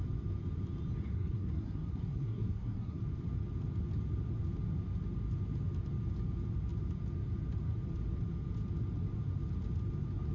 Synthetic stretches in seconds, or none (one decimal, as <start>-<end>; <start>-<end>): 1.1-3.0